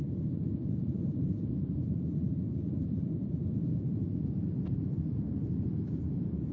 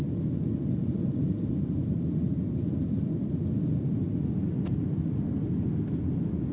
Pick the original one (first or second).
second